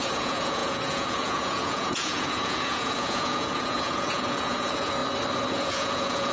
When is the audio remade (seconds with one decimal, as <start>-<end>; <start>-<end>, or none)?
0.0-5.0; 5.5-6.3